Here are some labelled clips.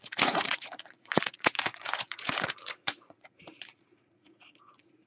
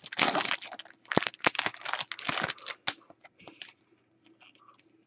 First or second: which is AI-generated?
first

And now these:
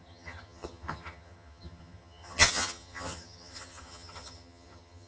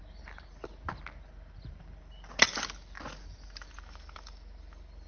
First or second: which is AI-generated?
first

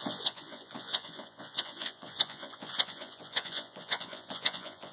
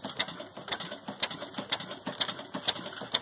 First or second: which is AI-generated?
first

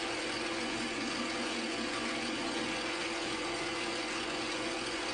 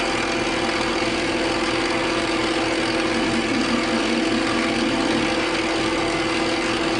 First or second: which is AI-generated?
first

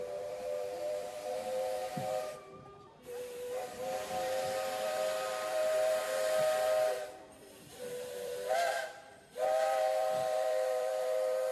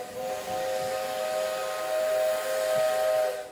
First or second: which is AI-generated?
first